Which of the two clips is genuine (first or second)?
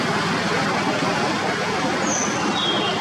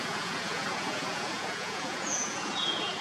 first